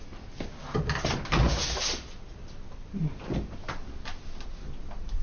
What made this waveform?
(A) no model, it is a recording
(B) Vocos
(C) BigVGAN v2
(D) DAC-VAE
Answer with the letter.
A